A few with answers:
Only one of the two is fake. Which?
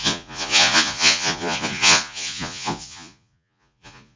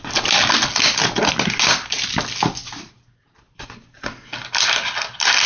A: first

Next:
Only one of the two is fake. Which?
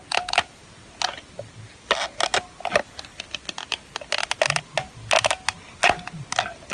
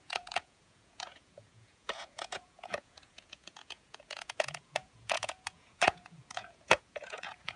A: second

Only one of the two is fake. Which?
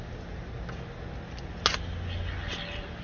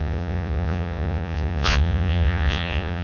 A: second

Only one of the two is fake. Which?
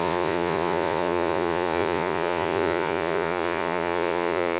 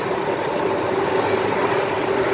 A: first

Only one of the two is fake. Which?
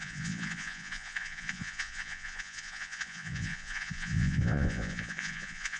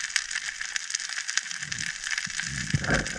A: first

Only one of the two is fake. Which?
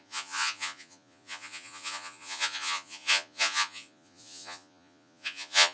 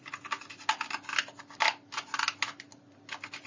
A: first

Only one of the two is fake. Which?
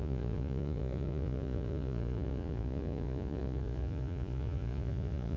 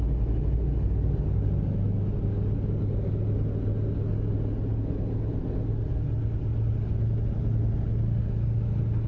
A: first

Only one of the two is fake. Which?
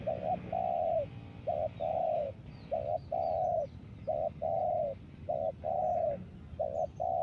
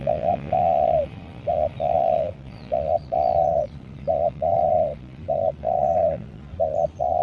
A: second